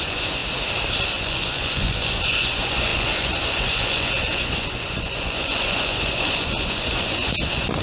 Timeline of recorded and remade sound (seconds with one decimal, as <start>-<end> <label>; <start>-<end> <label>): 0.0-0.4 remade; 0.4-1.1 recorded; 1.1-7.8 remade

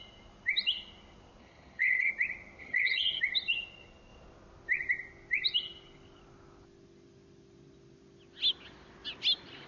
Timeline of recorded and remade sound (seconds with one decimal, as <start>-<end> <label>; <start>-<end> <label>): 0.0-1.4 recorded; 1.4-2.1 remade; 2.1-2.6 recorded; 2.6-3.2 remade; 3.2-9.7 recorded

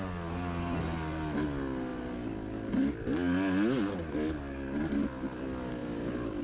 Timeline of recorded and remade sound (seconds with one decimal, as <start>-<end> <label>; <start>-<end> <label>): 0.0-6.4 recorded

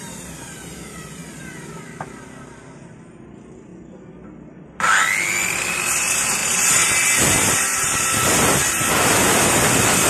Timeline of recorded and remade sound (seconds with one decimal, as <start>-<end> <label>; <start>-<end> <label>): 0.0-3.7 remade; 3.7-5.5 recorded; 5.5-7.7 remade; 7.7-8.9 recorded; 8.9-10.1 remade

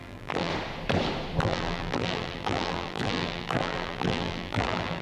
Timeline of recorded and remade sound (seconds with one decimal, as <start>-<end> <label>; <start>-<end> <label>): 0.0-0.5 remade; 0.5-1.4 recorded; 1.4-5.0 remade